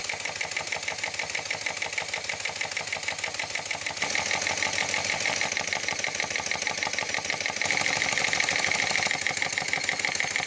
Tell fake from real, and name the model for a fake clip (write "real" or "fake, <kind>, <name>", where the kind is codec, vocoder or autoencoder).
real